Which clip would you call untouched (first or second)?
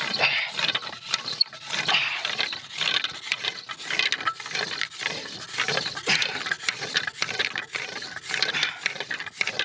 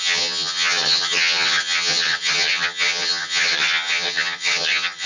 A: first